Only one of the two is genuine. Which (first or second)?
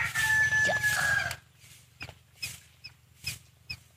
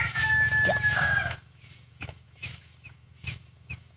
first